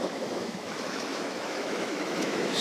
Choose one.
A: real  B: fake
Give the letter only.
B